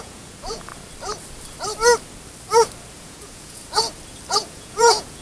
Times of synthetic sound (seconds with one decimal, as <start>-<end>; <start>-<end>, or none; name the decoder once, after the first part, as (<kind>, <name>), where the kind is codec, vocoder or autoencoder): 0.0-0.7 (vocoder, Vocos); 3.0-3.6; 4.3-5.2